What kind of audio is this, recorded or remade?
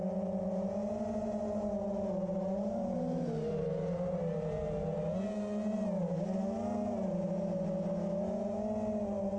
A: recorded